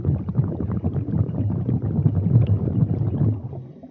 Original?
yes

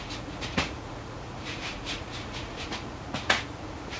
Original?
no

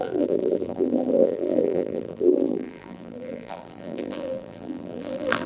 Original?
no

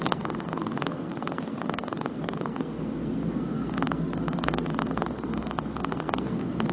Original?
no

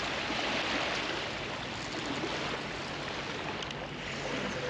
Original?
yes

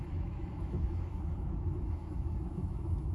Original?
no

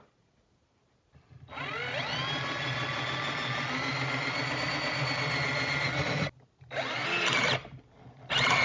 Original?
yes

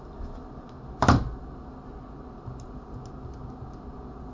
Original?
yes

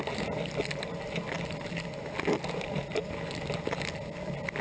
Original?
yes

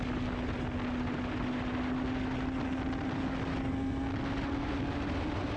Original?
yes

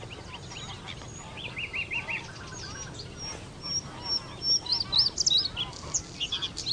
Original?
yes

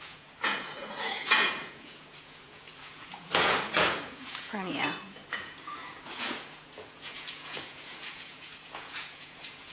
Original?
no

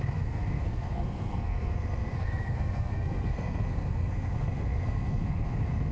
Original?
no